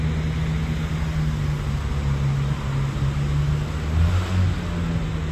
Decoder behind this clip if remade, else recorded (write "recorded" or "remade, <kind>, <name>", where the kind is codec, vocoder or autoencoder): recorded